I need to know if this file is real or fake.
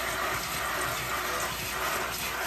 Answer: real